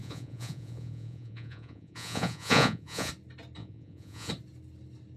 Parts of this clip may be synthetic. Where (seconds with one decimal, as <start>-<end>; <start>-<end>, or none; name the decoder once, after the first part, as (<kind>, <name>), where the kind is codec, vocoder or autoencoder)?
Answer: 0.0-3.1 (vocoder, Vocos); 3.6-4.3